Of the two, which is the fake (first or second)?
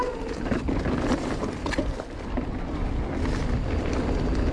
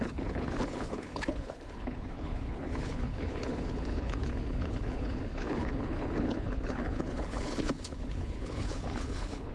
second